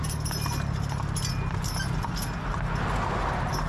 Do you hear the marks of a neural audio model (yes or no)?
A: no